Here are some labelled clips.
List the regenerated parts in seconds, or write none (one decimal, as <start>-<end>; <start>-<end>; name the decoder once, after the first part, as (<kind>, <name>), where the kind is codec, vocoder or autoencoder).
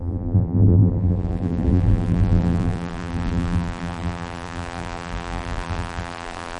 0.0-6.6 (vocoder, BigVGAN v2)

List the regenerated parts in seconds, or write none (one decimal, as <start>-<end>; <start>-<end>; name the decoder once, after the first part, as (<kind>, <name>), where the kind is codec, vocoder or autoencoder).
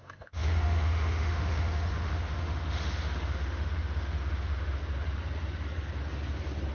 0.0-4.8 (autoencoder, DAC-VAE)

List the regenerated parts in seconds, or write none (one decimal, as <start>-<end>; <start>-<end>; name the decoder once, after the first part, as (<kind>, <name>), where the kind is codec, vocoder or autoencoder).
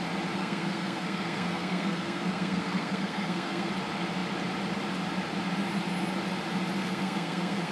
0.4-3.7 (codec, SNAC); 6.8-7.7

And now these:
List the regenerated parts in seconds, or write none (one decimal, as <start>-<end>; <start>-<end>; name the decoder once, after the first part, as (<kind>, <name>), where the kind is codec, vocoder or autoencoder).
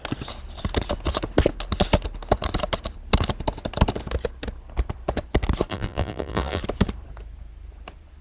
5.7-6.6 (vocoder, BigVGAN v2)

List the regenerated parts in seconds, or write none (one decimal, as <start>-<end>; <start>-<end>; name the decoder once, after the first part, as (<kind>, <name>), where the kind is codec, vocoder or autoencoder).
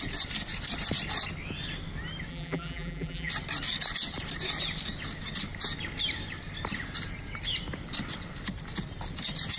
2.3-3.3 (vocoder, BigVGAN v2)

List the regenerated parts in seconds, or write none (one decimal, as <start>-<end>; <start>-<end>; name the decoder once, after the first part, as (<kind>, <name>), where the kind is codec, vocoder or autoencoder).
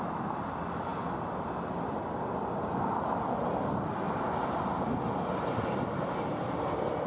none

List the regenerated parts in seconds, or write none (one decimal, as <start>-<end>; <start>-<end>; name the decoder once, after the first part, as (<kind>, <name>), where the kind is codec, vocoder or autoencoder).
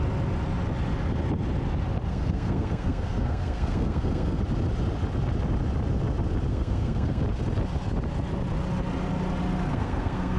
2.1-4.4 (codec, SNAC); 6.5-7.2; 9.7-10.4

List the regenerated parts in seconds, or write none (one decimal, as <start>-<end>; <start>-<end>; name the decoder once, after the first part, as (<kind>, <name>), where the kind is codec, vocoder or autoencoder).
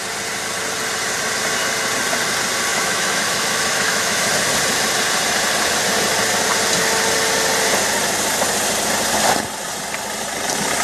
2.7-4.3 (autoencoder, DAC-VAE)